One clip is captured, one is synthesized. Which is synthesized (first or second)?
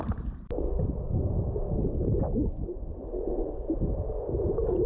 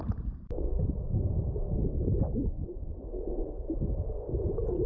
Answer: second